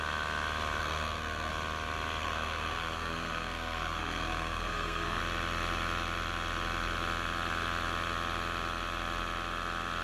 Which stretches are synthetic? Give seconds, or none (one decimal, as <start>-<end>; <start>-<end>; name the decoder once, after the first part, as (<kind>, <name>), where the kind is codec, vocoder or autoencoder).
0.8-1.5 (codec, SNAC); 2.2-5.2